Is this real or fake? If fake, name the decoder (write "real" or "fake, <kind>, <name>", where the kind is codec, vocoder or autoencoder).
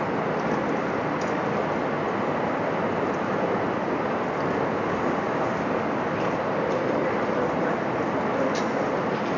real